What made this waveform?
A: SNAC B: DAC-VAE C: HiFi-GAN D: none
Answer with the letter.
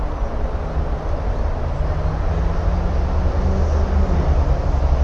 D